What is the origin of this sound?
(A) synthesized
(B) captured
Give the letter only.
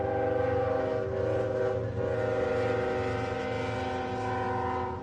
B